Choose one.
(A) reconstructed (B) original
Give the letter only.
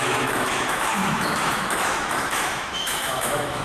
A